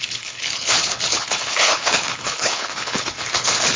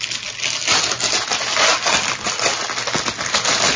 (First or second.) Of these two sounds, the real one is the second